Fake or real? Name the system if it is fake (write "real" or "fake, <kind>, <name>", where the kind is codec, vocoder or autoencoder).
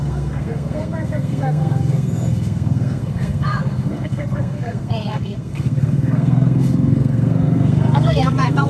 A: fake, codec, SNAC